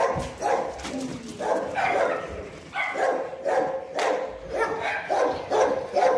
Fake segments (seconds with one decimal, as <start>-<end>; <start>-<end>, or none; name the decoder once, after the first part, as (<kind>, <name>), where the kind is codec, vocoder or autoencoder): none